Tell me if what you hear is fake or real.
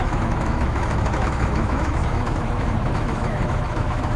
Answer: fake